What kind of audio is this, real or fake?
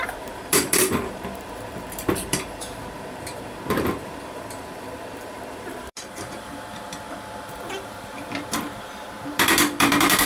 fake